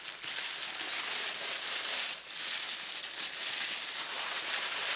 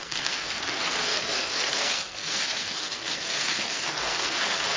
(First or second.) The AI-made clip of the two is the second